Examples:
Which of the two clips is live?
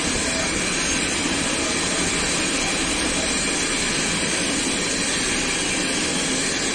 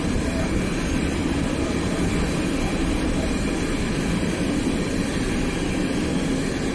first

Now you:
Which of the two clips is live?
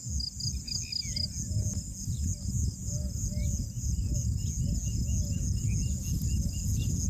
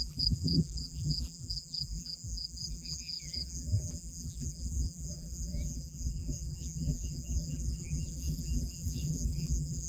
first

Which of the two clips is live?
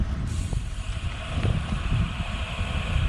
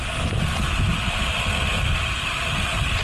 second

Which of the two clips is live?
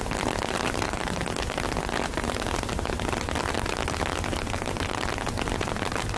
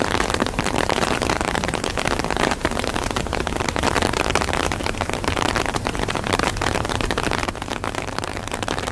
first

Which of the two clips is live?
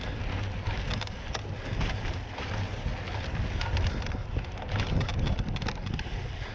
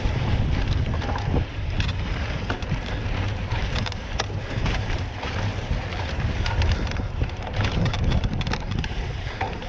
first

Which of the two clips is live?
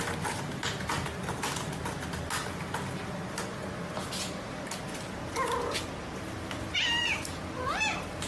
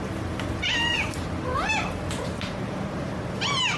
first